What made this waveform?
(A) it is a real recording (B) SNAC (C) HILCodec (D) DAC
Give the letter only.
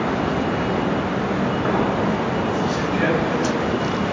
A